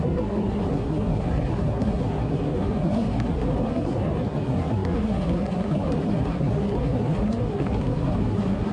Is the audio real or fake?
fake